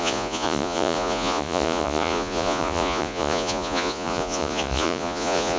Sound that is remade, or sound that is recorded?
remade